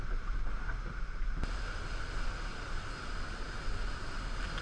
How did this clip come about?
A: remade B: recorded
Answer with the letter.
B